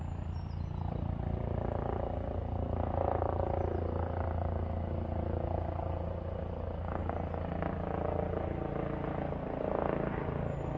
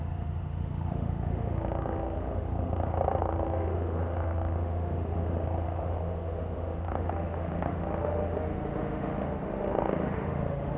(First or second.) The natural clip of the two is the first